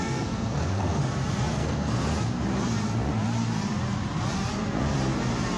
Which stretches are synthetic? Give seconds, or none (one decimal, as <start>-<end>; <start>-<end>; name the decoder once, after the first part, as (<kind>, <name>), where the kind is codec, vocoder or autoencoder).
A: 0.0-1.0 (codec, SNAC); 1.5-2.0

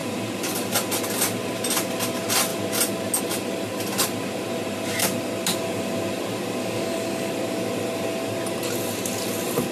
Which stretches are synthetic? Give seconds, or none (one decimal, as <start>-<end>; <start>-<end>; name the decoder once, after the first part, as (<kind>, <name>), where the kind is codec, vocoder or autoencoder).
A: 6.6-7.3 (codec, DAC)

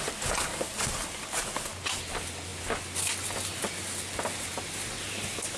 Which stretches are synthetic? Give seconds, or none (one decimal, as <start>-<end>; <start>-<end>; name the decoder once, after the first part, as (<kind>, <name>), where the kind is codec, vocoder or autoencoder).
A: none

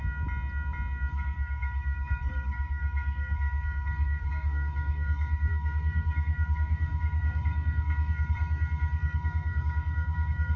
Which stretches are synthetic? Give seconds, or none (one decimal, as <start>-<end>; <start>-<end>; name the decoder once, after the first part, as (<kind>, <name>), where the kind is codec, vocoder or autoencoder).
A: 1.1-10.6 (codec, SNAC)

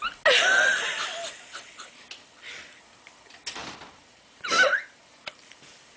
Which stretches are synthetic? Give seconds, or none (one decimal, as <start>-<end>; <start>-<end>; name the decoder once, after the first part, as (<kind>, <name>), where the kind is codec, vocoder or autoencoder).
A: 3.6-6.0 (vocoder, BigVGAN v2)

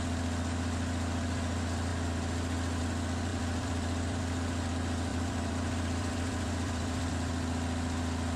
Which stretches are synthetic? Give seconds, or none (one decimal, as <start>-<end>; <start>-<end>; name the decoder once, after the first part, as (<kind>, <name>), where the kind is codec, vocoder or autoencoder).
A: 3.3-4.2 (vocoder, BigVGAN v2); 5.1-7.1

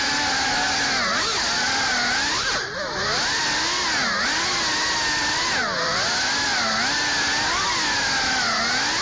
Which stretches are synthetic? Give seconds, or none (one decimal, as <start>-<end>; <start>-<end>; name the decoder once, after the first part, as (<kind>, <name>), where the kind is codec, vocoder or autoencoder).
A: none